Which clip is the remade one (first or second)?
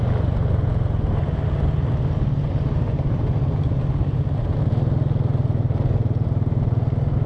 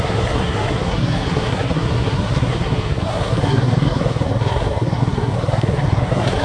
second